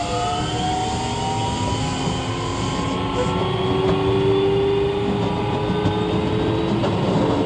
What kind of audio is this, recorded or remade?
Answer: recorded